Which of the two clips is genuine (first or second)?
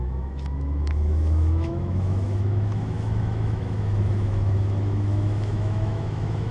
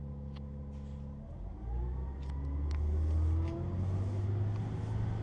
second